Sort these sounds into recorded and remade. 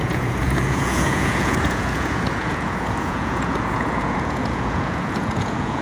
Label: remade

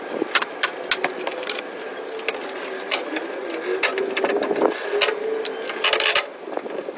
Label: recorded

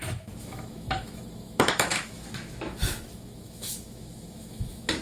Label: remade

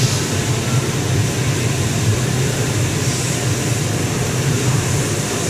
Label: recorded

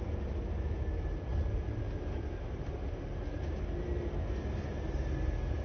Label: recorded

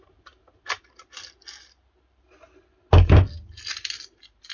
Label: recorded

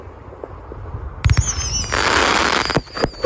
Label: recorded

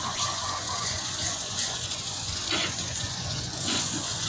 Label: remade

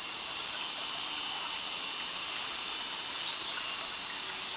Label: recorded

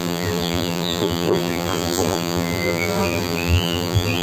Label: remade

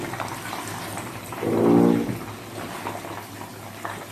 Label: recorded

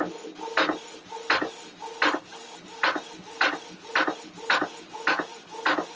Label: recorded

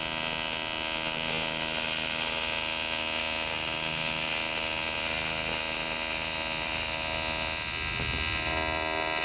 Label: recorded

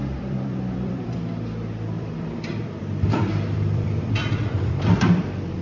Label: remade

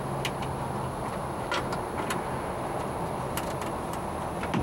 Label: recorded